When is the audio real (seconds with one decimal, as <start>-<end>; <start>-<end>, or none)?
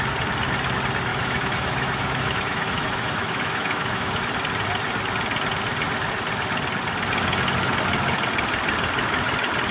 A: 0.0-1.1; 4.2-9.7